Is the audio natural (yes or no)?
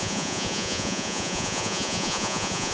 no